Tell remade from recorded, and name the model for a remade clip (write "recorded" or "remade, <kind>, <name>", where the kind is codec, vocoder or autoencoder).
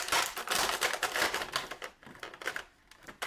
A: remade, vocoder, BigVGAN v2